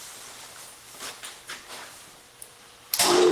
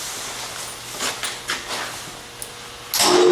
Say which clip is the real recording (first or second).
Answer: second